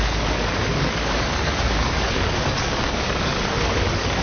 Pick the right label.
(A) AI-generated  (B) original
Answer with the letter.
A